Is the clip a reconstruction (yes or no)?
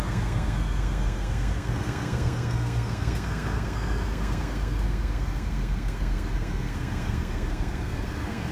yes